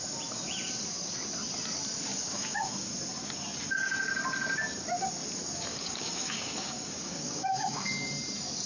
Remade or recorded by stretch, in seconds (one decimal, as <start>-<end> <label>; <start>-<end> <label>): 0.0-2.1 recorded; 2.1-2.9 remade; 2.9-5.7 recorded; 5.7-8.1 remade; 8.1-8.7 recorded